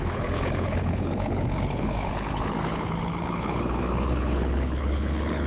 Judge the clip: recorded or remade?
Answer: remade